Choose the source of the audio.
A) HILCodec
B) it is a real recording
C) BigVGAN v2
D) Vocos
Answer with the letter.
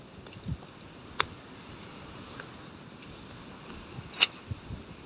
B